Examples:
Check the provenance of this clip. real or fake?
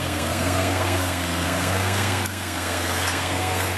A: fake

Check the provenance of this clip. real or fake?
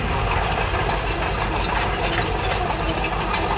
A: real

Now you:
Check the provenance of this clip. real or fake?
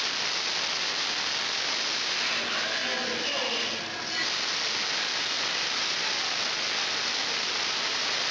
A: real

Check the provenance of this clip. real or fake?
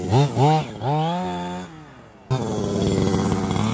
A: real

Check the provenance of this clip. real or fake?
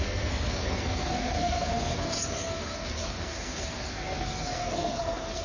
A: fake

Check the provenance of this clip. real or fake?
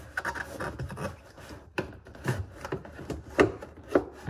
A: real